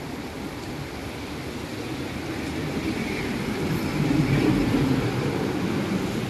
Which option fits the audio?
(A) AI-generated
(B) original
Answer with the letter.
A